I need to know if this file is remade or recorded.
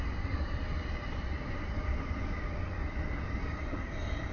recorded